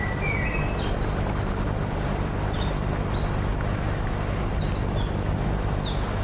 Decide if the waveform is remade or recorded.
recorded